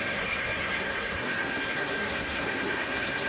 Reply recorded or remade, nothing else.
remade